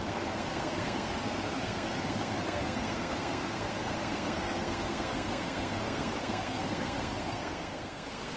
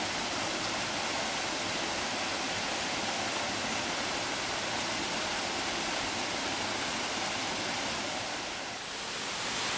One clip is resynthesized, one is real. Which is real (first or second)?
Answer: second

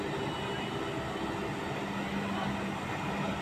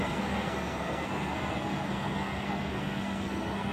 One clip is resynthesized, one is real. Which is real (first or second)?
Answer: first